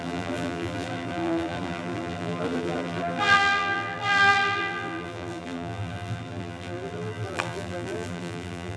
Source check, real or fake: fake